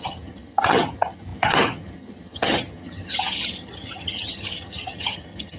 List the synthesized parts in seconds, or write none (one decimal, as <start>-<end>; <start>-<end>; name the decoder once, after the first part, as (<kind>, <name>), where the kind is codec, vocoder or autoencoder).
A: 0.0-5.6 (vocoder, HiFi-GAN)